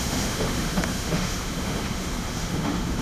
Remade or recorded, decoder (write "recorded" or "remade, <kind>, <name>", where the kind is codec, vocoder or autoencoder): remade, autoencoder, DAC-VAE